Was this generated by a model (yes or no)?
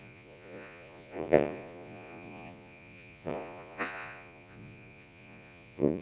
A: yes